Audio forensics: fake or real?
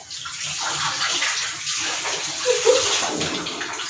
real